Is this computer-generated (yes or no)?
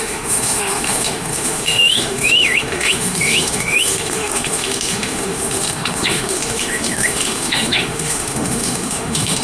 yes